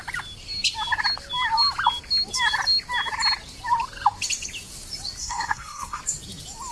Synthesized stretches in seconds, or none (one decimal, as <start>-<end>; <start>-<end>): 5.2-6.0